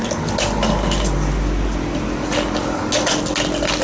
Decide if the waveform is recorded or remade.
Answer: recorded